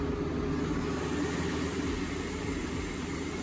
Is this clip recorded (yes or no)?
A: yes